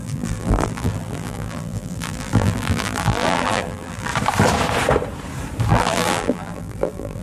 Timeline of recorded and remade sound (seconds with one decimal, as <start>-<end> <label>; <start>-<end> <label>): 0.0-4.1 remade; 4.1-5.7 recorded; 5.7-7.2 remade